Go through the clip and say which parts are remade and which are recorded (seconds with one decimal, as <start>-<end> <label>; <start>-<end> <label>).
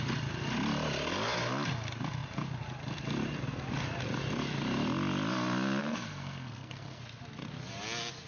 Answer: 0.0-5.8 recorded; 5.8-7.0 remade; 7.0-8.3 recorded